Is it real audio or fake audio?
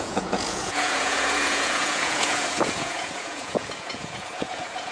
fake